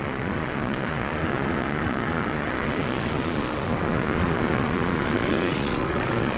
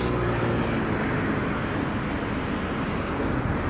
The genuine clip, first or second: second